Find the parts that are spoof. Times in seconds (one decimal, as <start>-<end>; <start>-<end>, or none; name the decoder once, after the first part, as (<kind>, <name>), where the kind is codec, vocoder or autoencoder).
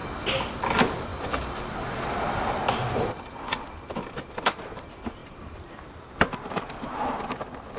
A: 5.2-6.7 (vocoder, BigVGAN v2)